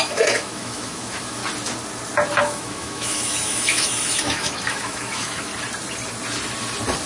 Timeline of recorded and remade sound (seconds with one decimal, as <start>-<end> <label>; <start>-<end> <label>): 0.0-1.4 remade; 1.4-2.4 recorded; 2.4-5.5 remade; 5.5-7.1 recorded

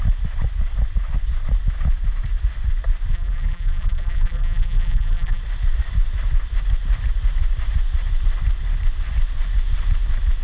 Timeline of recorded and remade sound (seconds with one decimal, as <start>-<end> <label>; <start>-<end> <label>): 0.0-3.1 recorded; 3.1-5.4 remade; 5.4-10.4 recorded

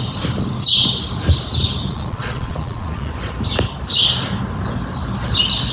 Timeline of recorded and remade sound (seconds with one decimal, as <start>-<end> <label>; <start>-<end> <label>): 0.0-1.9 recorded; 1.9-3.1 remade; 3.1-5.7 recorded